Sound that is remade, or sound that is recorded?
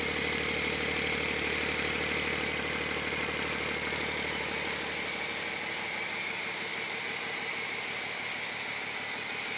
recorded